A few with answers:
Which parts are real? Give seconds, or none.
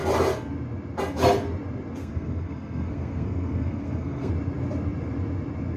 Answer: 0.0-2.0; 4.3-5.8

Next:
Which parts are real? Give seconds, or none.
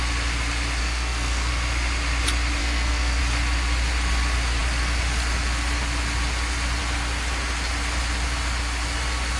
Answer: 0.0-0.8; 1.5-2.6; 3.2-9.4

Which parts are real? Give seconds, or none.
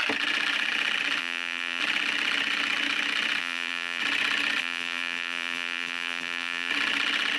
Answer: 0.0-1.2; 1.8-3.4; 4.0-4.6; 6.7-7.4